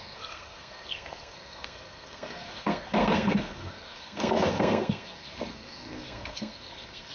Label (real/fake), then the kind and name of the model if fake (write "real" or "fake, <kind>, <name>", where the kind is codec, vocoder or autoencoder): fake, codec, SNAC